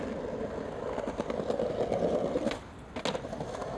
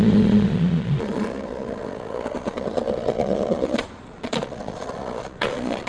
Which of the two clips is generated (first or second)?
second